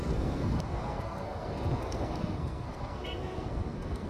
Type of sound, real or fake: fake